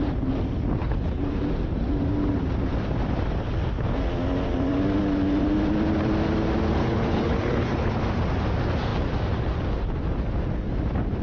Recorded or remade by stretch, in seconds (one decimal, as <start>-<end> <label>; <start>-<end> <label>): 0.0-0.8 recorded; 0.8-1.4 remade; 1.4-6.8 recorded; 6.8-8.0 remade; 8.0-11.2 recorded